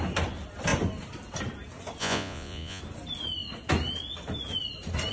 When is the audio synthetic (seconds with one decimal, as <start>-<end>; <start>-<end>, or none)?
2.0-2.8